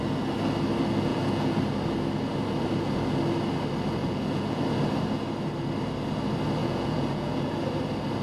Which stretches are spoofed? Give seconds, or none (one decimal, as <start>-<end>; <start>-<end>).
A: 1.1-1.6; 4.0-4.6; 6.6-7.5